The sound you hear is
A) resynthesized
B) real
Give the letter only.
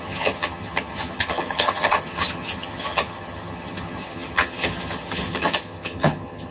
A